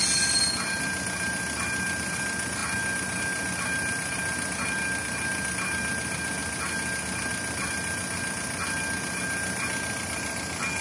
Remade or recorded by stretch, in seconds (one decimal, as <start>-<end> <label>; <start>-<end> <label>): 0.0-10.8 recorded